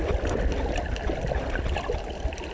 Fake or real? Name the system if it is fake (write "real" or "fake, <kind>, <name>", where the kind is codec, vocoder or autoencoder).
real